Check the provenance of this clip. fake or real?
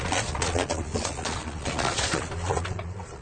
fake